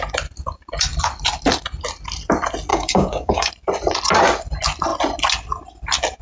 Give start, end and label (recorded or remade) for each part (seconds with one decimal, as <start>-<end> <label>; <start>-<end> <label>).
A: 0.0-2.7 recorded; 2.7-3.5 remade; 3.5-6.2 recorded